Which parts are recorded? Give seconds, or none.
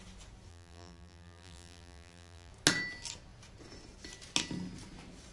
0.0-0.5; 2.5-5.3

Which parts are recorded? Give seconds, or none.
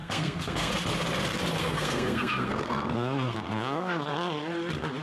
0.7-1.6; 4.1-5.0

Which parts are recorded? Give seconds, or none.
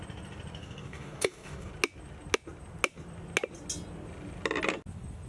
0.0-0.6; 1.7-5.3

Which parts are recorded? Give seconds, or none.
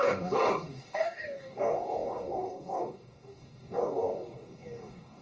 none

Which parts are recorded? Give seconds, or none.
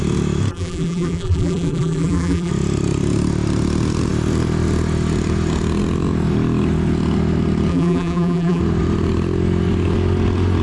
0.0-0.5; 2.5-7.7; 8.6-10.6